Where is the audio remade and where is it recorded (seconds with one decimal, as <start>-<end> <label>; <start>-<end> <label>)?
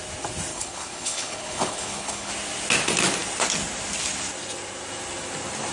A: 0.0-0.5 recorded; 0.5-2.3 remade; 2.3-5.7 recorded